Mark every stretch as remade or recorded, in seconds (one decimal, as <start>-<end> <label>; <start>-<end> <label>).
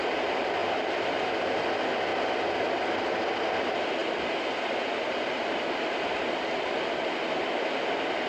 0.0-0.6 recorded; 0.6-1.5 remade; 1.5-4.0 recorded; 4.0-6.8 remade; 6.8-8.3 recorded